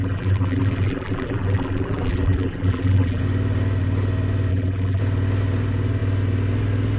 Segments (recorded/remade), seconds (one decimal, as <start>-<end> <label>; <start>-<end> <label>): 0.0-3.2 remade; 3.2-4.5 recorded; 4.5-5.0 remade; 5.0-7.0 recorded